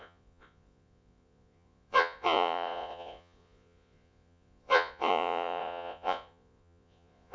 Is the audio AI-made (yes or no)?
yes